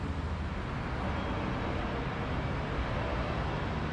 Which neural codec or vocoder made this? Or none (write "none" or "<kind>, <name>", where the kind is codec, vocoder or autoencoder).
none